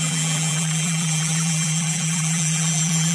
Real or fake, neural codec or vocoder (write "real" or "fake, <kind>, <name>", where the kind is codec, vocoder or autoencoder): fake, vocoder, BigVGAN v2